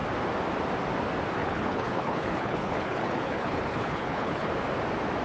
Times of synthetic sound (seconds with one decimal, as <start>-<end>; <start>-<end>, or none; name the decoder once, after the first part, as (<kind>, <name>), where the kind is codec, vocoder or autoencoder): 1.4-4.5 (codec, HILCodec)